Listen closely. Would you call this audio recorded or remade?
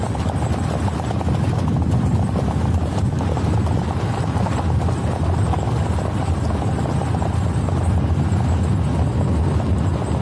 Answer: recorded